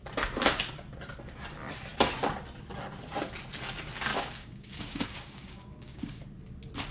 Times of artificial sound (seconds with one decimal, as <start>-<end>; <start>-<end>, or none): 4.1-6.2